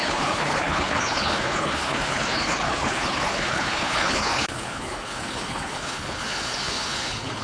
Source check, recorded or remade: remade